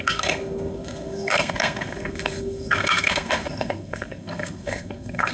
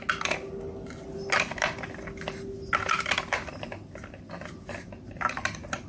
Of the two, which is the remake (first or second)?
first